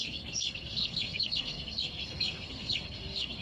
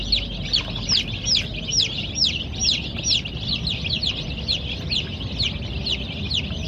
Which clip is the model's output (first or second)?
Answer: first